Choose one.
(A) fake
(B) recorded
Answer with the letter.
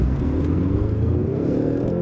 A